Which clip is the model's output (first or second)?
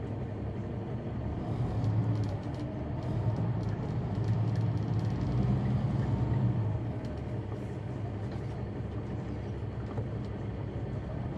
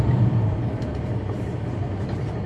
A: second